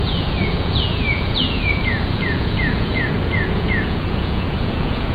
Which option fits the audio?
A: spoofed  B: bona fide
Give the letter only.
A